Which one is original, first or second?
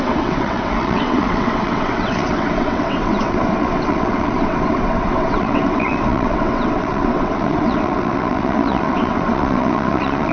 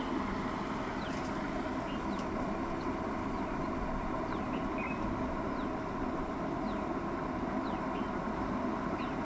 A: second